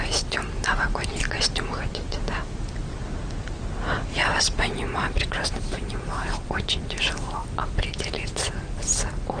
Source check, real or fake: real